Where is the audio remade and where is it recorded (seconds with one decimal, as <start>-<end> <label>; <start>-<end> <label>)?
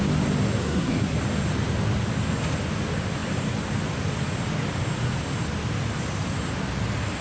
0.0-0.6 recorded; 0.6-1.2 remade; 1.2-7.2 recorded